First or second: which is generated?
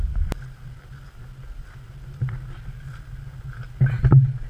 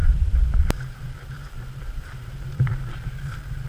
second